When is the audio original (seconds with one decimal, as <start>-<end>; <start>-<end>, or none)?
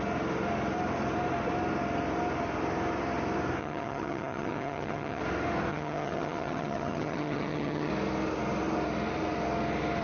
0.0-3.6; 5.2-5.7; 7.9-10.0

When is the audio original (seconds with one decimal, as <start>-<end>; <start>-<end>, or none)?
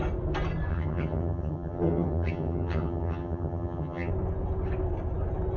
0.0-0.7; 4.1-5.6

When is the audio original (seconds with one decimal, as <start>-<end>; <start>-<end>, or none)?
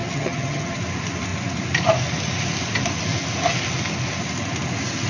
0.8-5.1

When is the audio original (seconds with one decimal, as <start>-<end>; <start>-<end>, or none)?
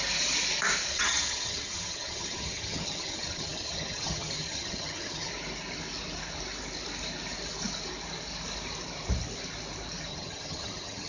0.0-0.9; 5.3-10.1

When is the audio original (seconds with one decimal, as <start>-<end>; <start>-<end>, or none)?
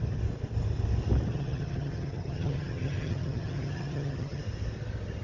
0.0-1.3; 4.4-5.2